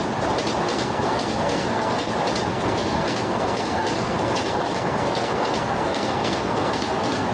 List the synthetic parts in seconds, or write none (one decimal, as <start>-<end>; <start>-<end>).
0.7-2.1; 2.5-7.3